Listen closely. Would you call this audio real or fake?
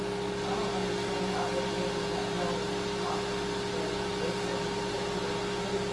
real